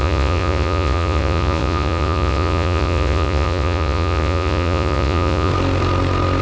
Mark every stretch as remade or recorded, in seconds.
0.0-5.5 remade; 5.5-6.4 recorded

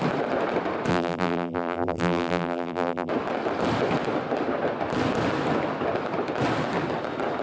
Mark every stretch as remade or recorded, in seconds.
0.0-0.9 recorded; 0.9-3.1 remade; 3.1-7.4 recorded